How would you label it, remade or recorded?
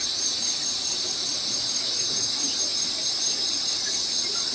recorded